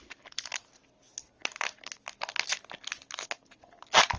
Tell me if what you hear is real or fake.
real